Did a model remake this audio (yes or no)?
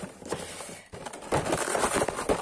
no